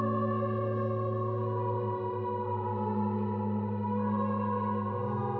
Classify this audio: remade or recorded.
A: recorded